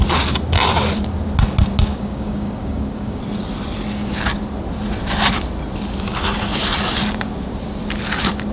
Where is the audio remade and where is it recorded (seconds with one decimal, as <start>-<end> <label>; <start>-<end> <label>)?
0.0-1.9 recorded; 1.9-3.2 remade; 3.2-8.5 recorded